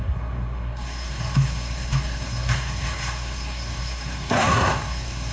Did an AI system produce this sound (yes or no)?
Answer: yes